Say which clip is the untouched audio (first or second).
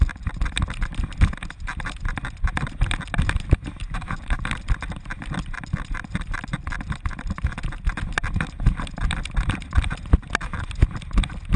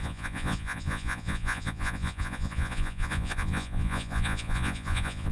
first